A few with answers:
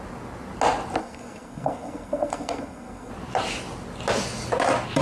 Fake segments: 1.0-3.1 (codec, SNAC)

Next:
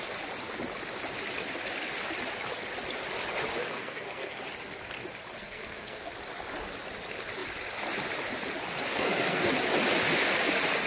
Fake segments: 3.6-4.4 (codec, SNAC); 5.4-6.0; 8.9-9.5

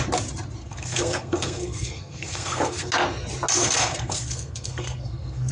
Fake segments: 0.6-2.9 (codec, SNAC); 3.6-5.5